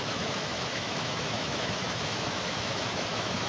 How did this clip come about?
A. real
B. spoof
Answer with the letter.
B